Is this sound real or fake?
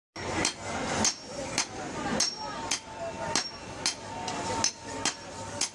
real